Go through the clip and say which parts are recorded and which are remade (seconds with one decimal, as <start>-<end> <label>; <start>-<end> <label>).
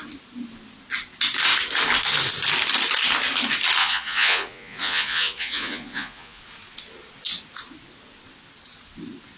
0.0-3.8 recorded; 3.8-6.4 remade; 6.4-9.4 recorded